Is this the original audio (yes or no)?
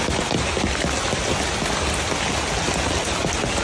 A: yes